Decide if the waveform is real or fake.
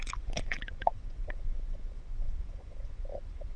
fake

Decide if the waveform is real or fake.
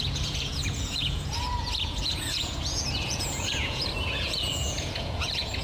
fake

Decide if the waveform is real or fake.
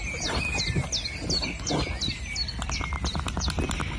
real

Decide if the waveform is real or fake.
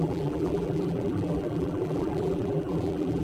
fake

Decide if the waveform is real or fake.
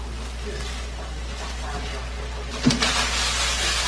real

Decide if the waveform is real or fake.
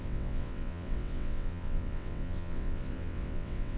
fake